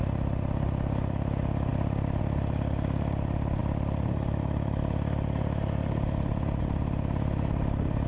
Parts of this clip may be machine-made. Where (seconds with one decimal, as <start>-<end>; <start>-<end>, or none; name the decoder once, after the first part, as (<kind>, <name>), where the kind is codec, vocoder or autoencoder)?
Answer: none